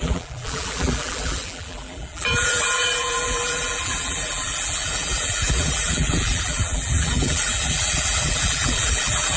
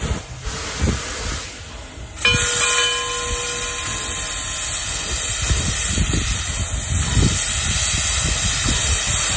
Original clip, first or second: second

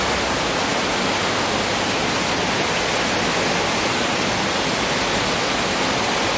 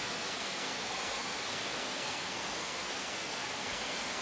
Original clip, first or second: first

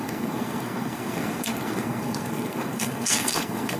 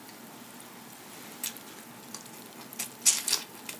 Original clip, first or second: second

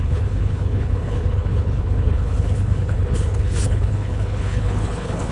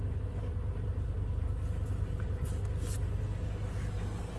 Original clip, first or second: second